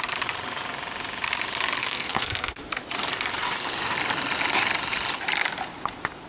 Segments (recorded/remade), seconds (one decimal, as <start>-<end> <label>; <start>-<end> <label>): 0.0-1.8 recorded; 1.8-2.7 remade; 2.7-6.3 recorded